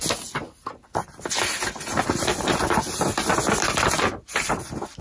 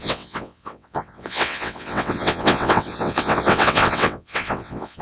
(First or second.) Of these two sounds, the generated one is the second